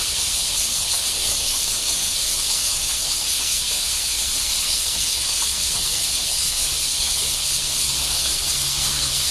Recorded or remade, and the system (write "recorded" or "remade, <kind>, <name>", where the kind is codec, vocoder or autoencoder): remade, codec, SNAC